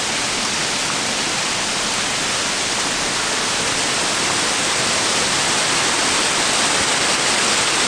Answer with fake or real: real